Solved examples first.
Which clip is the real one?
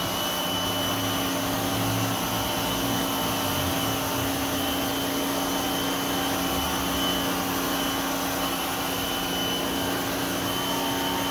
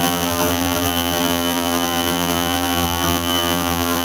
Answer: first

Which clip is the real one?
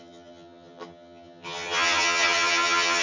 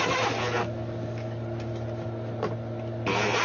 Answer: second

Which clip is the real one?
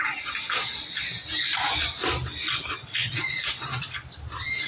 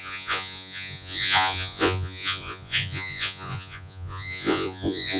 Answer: first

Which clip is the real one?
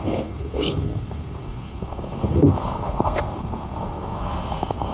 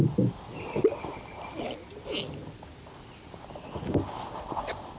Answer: second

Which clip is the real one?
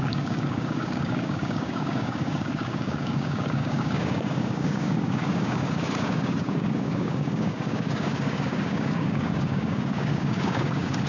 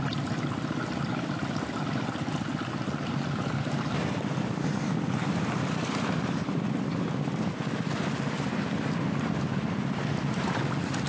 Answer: second